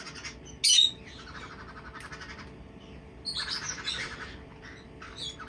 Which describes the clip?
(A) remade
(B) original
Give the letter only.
B